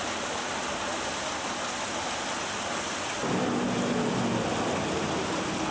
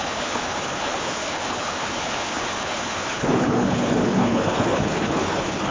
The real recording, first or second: first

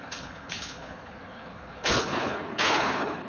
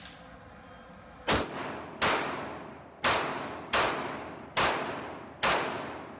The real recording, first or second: second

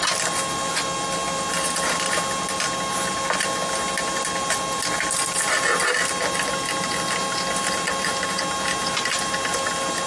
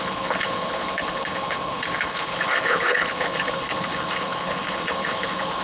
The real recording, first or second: first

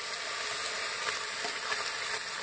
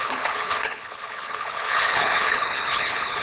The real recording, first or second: first